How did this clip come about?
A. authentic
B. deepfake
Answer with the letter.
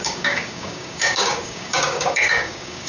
B